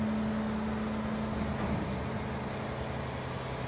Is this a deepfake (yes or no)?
no